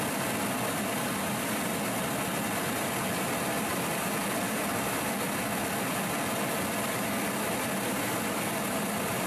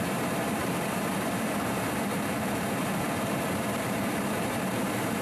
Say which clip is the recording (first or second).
first